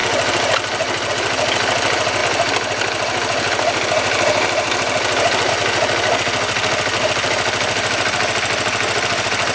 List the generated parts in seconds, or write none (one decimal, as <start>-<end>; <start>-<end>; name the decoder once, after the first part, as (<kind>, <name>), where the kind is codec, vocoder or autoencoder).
none